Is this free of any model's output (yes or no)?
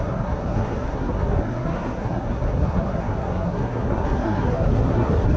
no